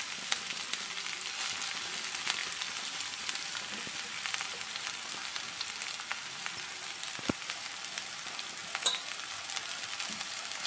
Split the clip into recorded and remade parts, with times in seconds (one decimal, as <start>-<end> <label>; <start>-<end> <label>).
0.0-5.3 remade; 5.3-5.9 recorded; 5.9-10.7 remade